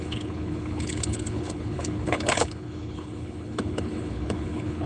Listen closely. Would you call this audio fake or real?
fake